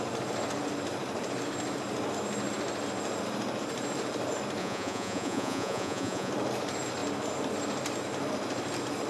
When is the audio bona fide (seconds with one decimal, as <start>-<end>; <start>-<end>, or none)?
0.0-4.6; 6.3-9.1